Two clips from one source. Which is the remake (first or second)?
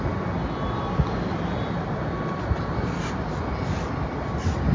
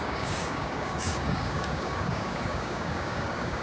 second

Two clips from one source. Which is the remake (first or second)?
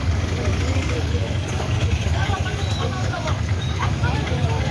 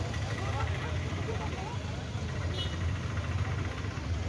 first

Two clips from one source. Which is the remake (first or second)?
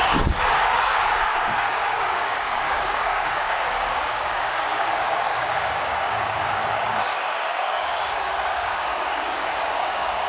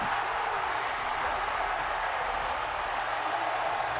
first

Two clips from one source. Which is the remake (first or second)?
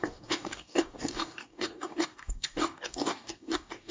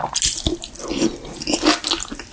first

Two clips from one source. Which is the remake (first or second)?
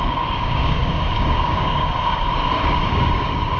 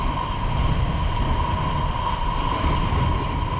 first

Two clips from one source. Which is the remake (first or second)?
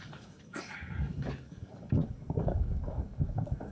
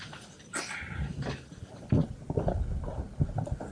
first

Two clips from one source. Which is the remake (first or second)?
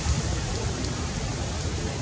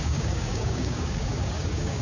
second